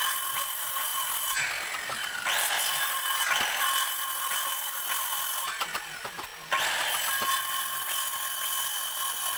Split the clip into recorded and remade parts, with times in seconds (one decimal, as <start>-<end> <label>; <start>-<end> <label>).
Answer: 0.0-0.9 remade; 0.9-1.9 recorded; 1.9-6.3 remade; 6.3-7.4 recorded; 7.4-8.1 remade; 8.1-9.0 recorded; 9.0-9.4 remade